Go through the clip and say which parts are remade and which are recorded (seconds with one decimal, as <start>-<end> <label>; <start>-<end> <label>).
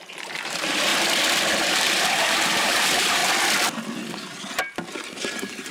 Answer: 0.0-0.9 remade; 0.9-1.7 recorded; 1.7-3.2 remade; 3.2-4.9 recorded; 4.9-5.7 remade